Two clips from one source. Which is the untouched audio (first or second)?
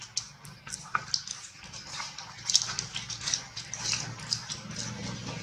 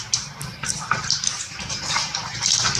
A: first